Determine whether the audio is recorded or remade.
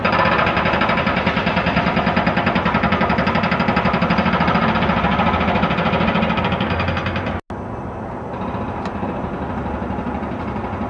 recorded